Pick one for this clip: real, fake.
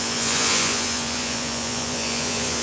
fake